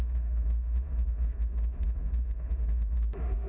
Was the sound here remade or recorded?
remade